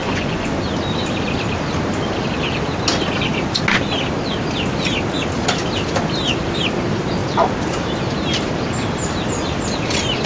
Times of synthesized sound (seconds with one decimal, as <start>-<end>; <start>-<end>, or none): 0.0-0.5

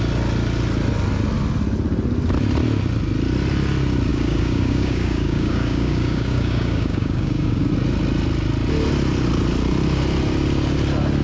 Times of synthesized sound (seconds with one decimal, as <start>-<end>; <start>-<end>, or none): 4.1-7.7

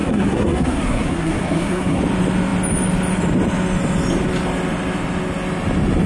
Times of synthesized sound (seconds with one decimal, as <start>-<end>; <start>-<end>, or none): 0.0-2.0

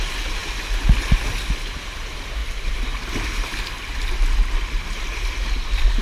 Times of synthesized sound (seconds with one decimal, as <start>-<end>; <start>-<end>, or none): none